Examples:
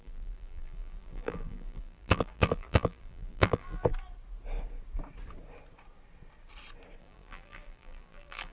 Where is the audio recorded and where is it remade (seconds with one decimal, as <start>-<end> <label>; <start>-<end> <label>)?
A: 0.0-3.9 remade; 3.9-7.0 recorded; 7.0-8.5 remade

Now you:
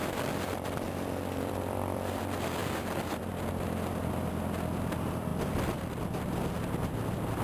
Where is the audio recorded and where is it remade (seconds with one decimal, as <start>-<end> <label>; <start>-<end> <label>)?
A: 0.0-2.2 remade; 2.2-2.6 recorded; 2.6-3.3 remade; 3.3-5.3 recorded; 5.3-6.0 remade; 6.0-7.4 recorded

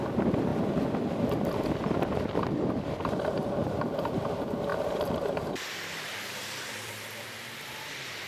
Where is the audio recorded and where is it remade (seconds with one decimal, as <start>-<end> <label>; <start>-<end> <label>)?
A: 0.0-8.3 remade

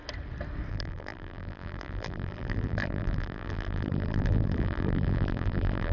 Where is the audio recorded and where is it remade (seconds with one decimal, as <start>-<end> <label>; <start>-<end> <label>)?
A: 0.0-0.7 recorded; 0.7-5.9 remade

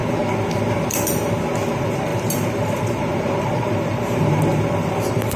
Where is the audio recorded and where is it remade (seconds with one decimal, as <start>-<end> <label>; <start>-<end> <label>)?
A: 0.0-1.7 recorded; 1.7-5.4 remade